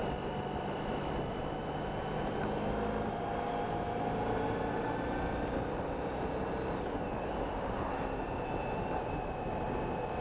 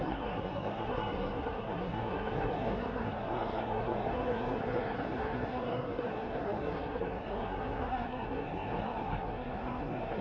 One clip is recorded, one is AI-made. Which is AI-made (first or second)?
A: second